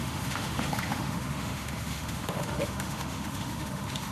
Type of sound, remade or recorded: remade